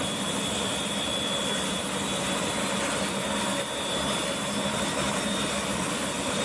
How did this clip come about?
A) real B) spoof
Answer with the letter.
A